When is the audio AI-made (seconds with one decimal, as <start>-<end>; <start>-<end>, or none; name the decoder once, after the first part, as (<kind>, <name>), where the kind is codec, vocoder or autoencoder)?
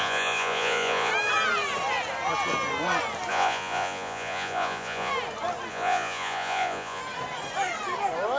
0.0-1.1 (vocoder, Vocos); 3.3-5.1; 5.7-7.0